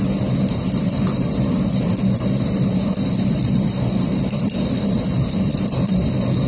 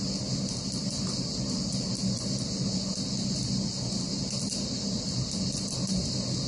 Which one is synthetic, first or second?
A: first